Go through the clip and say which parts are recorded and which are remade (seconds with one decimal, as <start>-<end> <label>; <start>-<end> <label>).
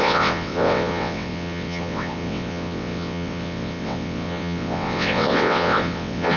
0.0-6.4 remade